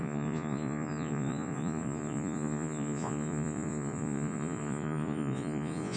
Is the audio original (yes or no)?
no